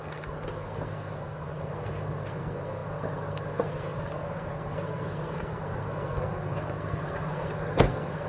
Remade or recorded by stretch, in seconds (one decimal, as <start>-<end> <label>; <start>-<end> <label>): 0.0-8.3 remade